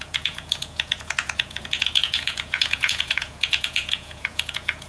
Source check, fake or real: fake